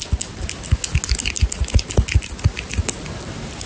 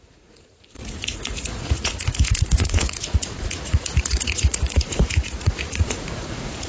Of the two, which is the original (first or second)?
first